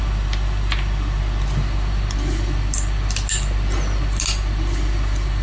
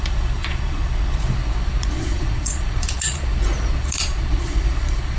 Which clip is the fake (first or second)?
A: second